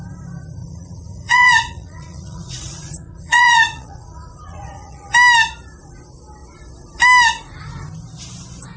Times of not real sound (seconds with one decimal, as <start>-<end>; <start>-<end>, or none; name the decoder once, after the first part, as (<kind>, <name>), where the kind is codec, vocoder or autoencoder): 0.6-5.1 (vocoder, Vocos)